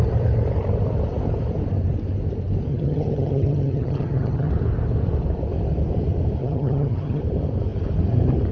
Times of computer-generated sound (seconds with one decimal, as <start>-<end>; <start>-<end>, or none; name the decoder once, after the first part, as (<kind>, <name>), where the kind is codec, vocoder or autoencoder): 2.7-4.5 (vocoder, HiFi-GAN); 6.4-7.2